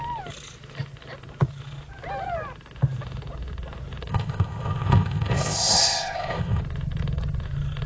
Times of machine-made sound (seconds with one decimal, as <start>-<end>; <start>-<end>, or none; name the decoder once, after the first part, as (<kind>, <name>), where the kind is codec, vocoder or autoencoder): 4.1-6.6 (codec, ZipCodec)